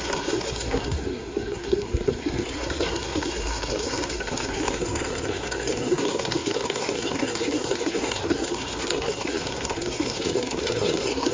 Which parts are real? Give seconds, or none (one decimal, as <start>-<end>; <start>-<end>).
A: none